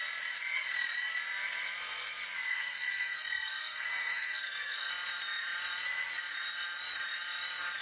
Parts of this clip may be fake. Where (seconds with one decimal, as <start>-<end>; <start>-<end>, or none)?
2.5-4.9